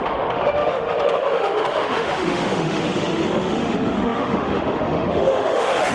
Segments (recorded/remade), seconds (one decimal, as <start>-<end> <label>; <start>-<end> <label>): 0.0-5.9 remade